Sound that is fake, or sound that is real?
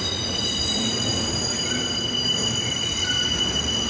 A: real